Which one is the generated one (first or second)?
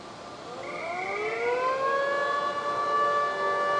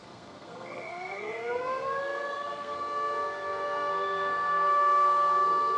second